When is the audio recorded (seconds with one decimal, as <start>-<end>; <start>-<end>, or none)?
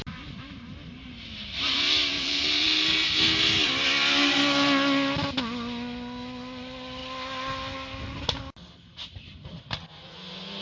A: 0.0-2.1; 3.4-10.6